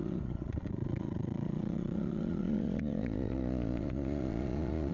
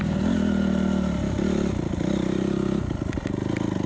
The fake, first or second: first